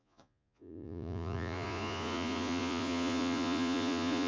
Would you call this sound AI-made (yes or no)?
yes